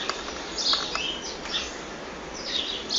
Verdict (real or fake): real